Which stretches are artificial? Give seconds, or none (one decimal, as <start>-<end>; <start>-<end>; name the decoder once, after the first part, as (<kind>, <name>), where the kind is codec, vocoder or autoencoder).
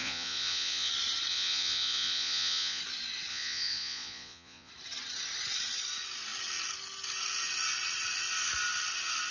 0.0-0.9 (vocoder, Vocos); 1.3-2.8; 3.3-4.7